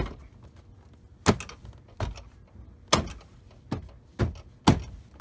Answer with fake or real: real